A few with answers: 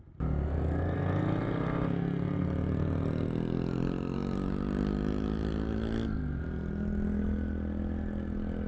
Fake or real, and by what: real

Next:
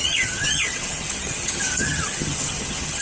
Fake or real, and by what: fake, vocoder, HiFi-GAN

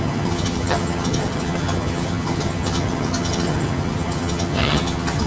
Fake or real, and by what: fake, vocoder, HiFi-GAN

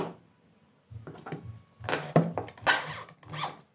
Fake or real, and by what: real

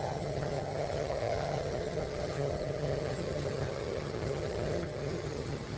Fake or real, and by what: fake, vocoder, HiFi-GAN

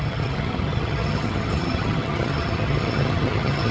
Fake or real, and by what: fake, vocoder, HiFi-GAN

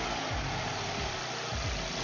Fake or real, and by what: real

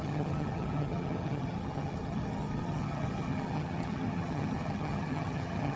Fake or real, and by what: fake, vocoder, HiFi-GAN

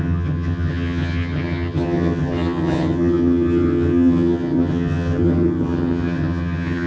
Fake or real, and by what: fake, vocoder, HiFi-GAN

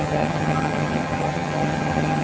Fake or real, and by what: fake, vocoder, HiFi-GAN